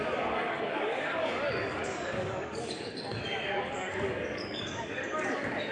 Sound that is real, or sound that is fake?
fake